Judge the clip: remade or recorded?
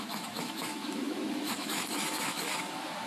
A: remade